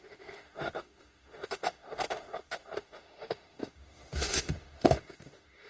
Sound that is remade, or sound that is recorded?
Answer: remade